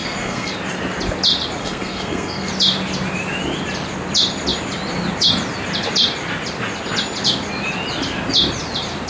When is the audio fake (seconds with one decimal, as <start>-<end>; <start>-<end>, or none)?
0.0-0.5; 1.6-2.5